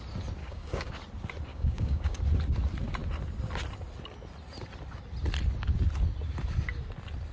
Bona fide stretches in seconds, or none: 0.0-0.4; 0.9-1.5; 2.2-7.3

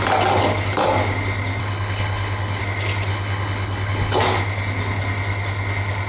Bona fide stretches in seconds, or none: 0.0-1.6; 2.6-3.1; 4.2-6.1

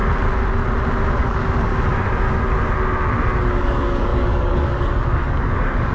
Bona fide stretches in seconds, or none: 0.0-1.2; 1.7-3.6

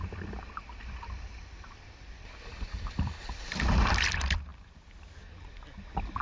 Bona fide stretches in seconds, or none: none

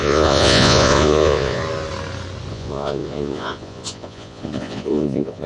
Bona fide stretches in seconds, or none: 1.6-2.5

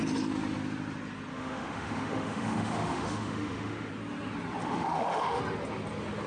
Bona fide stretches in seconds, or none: 0.0-1.3; 3.9-4.6; 5.4-6.3

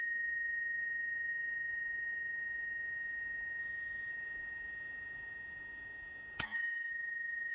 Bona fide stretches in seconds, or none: 3.6-4.1; 6.9-7.5

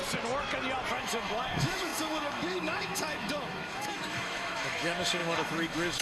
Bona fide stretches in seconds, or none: 0.0-0.9